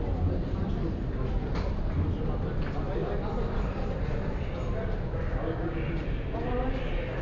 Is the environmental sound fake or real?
real